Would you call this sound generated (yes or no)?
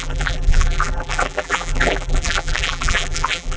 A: yes